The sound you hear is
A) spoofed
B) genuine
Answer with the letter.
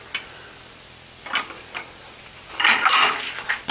A